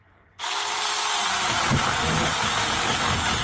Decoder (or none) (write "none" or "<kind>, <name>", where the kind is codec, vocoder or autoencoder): vocoder, BigVGAN v2